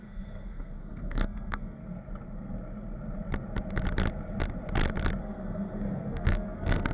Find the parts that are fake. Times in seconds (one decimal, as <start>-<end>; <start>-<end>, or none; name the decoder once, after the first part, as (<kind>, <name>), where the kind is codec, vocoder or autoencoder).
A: 0.0-1.8 (codec, SNAC); 5.2-6.9